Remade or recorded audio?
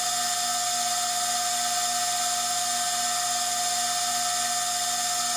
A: recorded